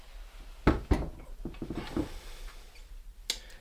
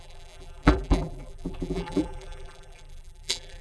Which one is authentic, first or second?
first